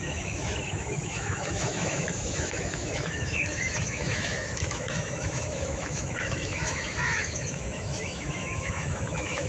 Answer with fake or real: fake